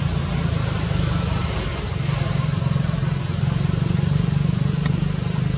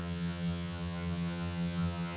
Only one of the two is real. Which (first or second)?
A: first